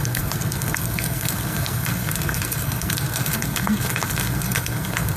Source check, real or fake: fake